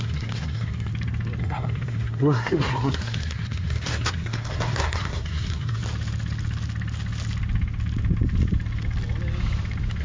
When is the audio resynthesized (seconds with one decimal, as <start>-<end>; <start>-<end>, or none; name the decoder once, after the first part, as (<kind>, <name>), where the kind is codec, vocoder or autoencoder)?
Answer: 0.0-0.9 (codec, SNAC); 1.4-5.8